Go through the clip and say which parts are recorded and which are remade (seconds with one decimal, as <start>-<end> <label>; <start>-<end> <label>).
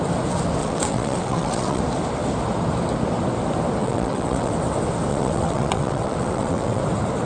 0.0-0.6 recorded; 0.6-1.8 remade; 1.8-3.8 recorded; 3.8-4.5 remade; 4.5-5.1 recorded; 5.1-6.8 remade; 6.8-7.3 recorded